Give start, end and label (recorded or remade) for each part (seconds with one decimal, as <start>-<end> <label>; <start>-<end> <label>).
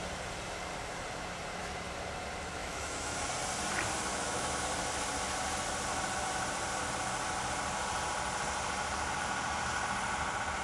0.0-2.6 recorded; 2.6-3.3 remade; 3.3-4.1 recorded; 4.1-4.6 remade; 4.6-10.6 recorded